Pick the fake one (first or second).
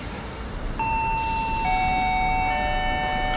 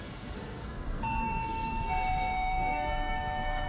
second